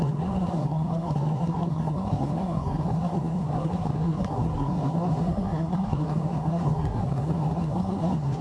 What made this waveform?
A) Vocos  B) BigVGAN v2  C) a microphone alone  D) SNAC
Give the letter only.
D